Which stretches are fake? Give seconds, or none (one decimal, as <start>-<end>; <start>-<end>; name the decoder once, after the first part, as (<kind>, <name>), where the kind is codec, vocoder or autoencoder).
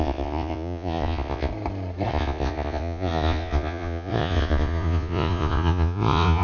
0.0-1.5 (vocoder, Vocos); 2.1-6.4